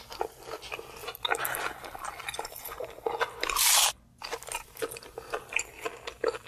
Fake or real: real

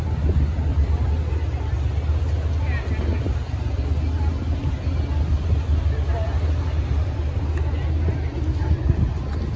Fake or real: real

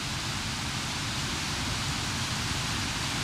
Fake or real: real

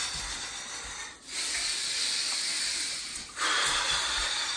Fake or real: fake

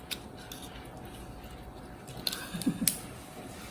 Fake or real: real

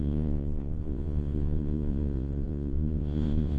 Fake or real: fake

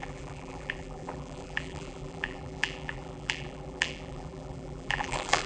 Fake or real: fake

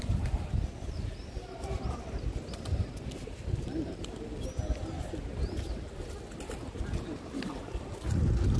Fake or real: real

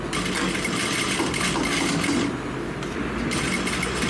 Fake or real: real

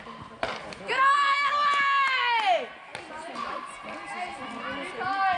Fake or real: real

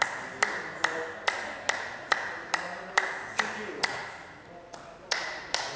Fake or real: real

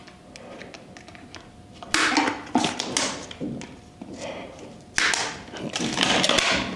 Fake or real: real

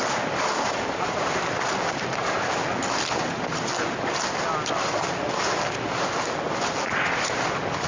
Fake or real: real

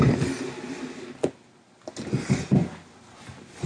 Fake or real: real